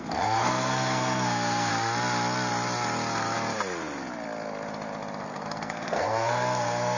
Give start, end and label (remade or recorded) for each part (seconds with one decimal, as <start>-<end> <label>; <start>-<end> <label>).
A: 0.0-1.7 remade; 1.7-5.2 recorded; 5.2-7.0 remade